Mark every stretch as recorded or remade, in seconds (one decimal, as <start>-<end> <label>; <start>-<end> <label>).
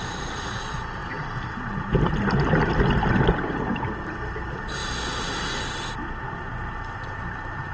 0.0-7.7 recorded